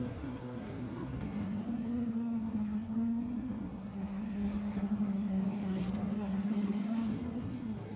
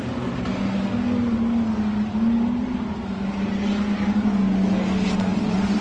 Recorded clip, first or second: second